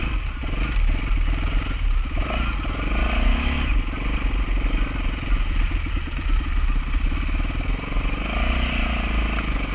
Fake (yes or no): no